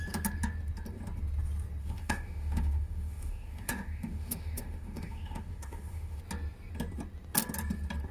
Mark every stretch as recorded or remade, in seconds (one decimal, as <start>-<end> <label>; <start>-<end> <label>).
0.0-1.8 recorded; 1.8-6.2 remade; 6.2-8.1 recorded